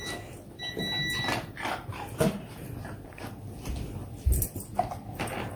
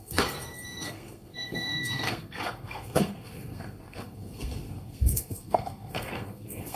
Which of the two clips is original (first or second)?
first